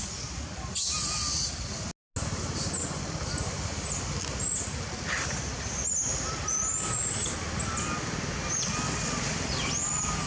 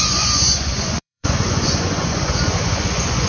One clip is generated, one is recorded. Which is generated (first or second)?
second